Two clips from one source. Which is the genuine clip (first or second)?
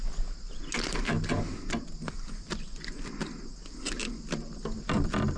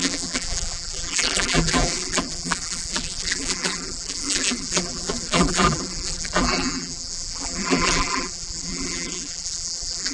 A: first